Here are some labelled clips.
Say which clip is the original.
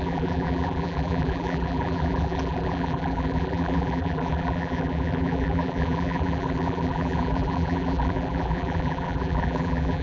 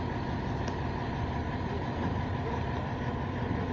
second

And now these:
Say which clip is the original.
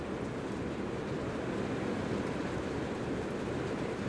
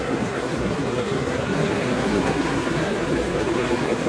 first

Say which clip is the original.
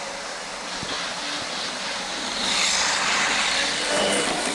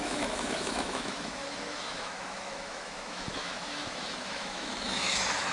first